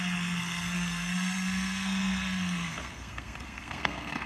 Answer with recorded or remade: remade